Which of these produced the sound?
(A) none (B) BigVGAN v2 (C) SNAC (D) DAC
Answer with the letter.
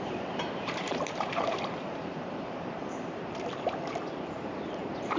B